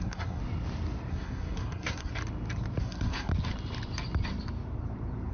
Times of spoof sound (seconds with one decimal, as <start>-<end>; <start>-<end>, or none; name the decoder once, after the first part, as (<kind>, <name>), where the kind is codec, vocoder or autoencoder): 0.0-0.4 (codec, SNAC); 1.1-2.1; 2.8-3.3